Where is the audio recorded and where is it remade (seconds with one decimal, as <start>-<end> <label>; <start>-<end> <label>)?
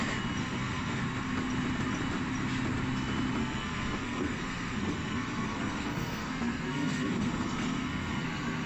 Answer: 0.0-0.4 recorded; 0.4-1.0 remade; 1.0-3.4 recorded; 3.4-8.7 remade